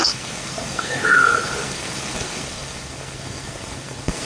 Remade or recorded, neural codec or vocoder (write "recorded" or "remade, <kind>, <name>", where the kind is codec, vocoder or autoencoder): remade, codec, SNAC